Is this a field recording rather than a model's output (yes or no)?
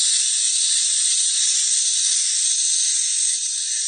yes